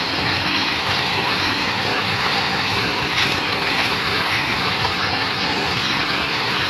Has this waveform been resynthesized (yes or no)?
yes